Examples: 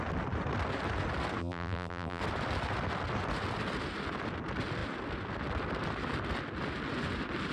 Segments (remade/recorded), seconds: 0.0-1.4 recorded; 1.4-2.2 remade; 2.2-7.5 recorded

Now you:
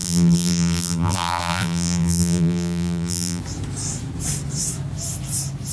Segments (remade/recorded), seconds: 0.0-3.4 remade; 3.4-5.7 recorded

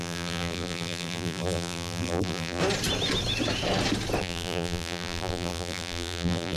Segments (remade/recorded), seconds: 0.0-2.6 remade; 2.6-4.2 recorded; 4.2-6.6 remade

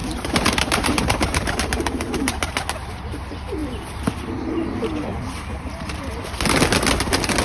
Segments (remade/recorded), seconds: 0.0-2.6 remade; 2.6-5.1 recorded; 5.1-6.2 remade; 6.2-7.4 recorded

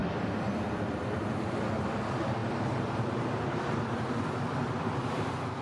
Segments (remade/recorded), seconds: 0.0-5.6 remade

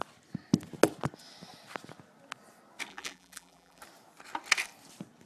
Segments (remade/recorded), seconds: 0.0-2.9 recorded; 2.9-3.8 remade; 3.8-5.3 recorded

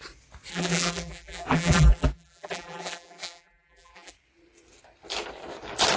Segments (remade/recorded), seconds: 0.0-0.5 recorded; 0.5-4.1 remade; 4.1-6.0 recorded

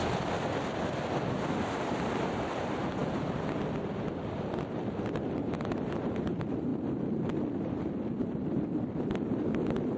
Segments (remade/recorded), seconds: 0.0-1.3 recorded; 1.3-10.0 remade